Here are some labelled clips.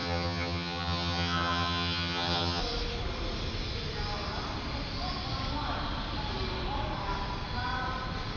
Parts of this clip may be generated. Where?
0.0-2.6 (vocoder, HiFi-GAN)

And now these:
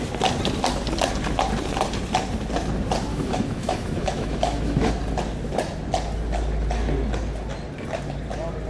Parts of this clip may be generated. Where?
3.1-4.9 (autoencoder, DAC-VAE)

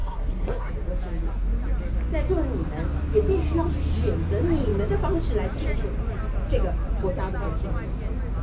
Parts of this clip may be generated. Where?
0.0-0.7 (codec, SNAC)

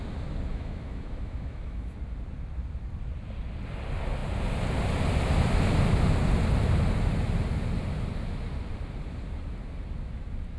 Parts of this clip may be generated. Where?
0.5-1.9 (autoencoder, DAC-VAE)

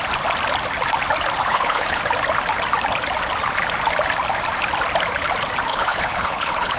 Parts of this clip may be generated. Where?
1.4-2.0 (codec, HILCodec); 5.7-6.8

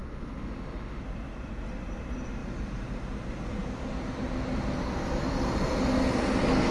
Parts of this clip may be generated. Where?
0.0-1.0 (autoencoder, DAC-VAE)